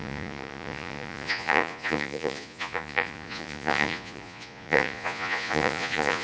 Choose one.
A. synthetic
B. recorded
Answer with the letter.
A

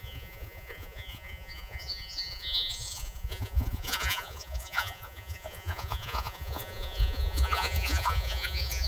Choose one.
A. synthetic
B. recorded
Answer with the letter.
A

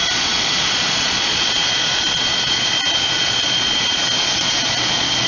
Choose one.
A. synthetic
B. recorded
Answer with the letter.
A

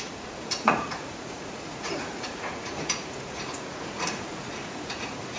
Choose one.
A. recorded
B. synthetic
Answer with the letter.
B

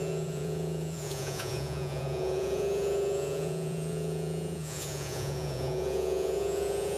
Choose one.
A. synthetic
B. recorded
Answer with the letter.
A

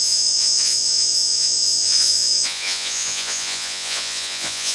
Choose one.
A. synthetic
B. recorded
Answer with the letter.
A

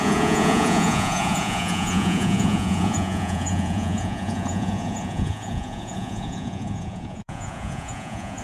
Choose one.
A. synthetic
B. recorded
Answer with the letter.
A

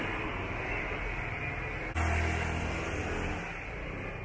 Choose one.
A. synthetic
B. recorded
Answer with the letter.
B